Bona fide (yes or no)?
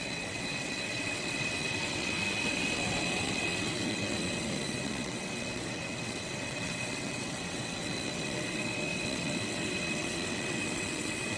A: no